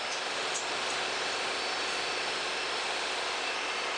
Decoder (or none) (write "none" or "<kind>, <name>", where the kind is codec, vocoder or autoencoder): none